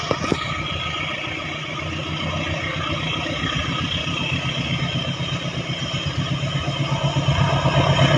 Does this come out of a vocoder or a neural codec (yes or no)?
no